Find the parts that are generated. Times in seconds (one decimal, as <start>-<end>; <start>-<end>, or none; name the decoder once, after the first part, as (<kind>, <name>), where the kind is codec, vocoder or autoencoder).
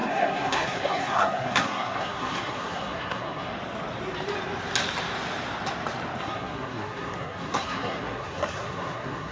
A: 0.0-3.5 (codec, SNAC); 6.2-9.3